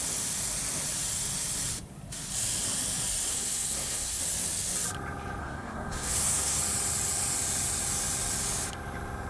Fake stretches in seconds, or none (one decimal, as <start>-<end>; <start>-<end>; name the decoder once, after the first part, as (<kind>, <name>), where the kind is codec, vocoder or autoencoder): 3.3-4.2 (codec, SNAC); 5.4-6.6